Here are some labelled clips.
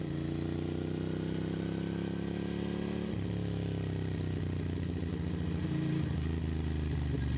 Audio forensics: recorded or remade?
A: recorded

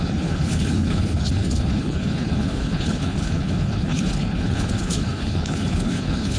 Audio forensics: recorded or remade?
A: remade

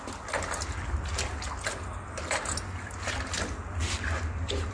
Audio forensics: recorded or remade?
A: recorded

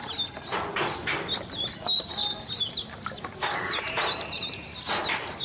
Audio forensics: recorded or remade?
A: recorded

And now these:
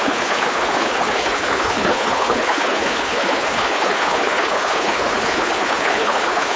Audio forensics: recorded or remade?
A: remade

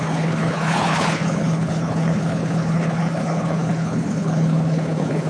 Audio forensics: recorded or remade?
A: remade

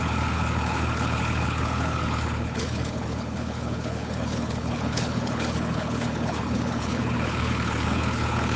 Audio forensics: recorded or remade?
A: remade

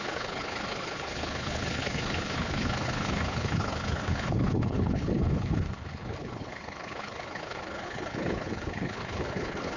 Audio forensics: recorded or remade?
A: remade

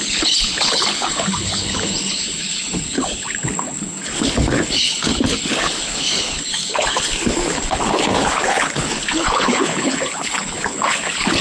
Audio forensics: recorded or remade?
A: remade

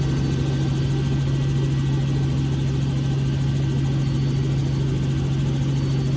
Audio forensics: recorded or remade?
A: recorded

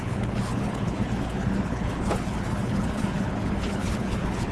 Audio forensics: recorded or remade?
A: remade